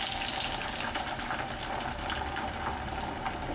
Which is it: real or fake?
real